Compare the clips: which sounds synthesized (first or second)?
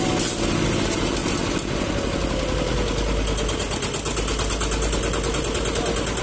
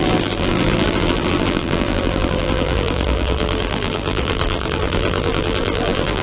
second